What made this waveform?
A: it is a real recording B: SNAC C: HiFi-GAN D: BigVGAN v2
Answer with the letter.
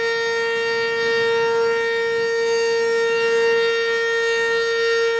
A